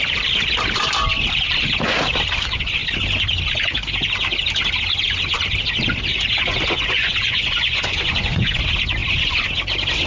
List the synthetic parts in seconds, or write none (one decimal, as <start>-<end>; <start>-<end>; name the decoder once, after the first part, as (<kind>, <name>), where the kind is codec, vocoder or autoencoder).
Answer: 6.1-8.6 (vocoder, Vocos); 9.0-9.5